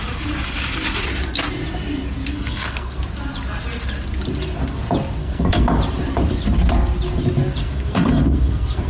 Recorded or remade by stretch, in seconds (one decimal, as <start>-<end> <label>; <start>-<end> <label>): 0.0-2.3 recorded; 2.3-3.0 remade; 3.0-5.2 recorded; 5.2-5.8 remade; 5.8-7.6 recorded; 7.6-8.9 remade